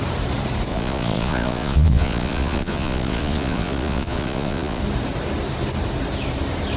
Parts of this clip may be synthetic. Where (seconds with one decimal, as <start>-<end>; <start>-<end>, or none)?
0.7-4.8